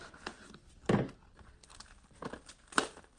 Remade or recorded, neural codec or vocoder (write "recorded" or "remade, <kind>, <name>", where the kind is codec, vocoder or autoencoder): recorded